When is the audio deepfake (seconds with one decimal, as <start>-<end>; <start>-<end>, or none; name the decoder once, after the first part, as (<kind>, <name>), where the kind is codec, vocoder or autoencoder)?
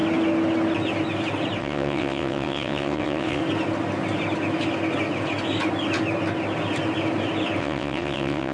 1.6-3.4 (vocoder, WaveNeXt); 7.6-8.5